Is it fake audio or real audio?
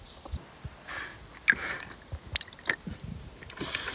real